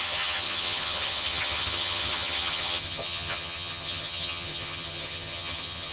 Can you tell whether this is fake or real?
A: fake